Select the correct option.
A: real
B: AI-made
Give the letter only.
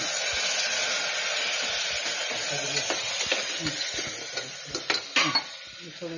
A